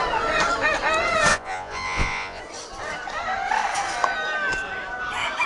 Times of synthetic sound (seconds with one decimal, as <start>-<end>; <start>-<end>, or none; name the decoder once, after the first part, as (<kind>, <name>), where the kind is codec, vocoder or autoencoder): 1.3-2.4 (vocoder, Vocos)

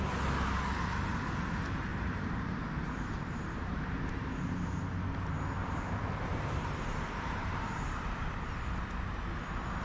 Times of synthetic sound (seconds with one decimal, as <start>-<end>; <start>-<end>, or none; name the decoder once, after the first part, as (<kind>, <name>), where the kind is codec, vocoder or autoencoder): 1.9-4.8 (vocoder, BigVGAN v2); 5.6-7.8

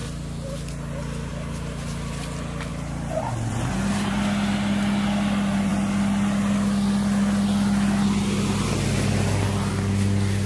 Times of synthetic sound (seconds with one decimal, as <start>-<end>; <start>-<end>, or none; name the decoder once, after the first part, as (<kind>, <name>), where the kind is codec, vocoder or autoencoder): none